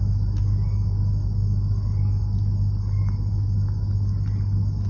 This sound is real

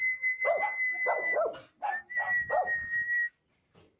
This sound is real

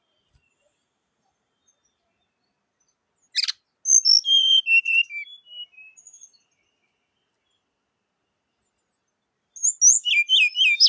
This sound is real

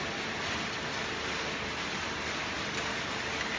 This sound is real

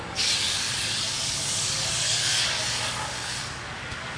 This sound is fake